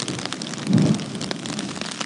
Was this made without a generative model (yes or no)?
yes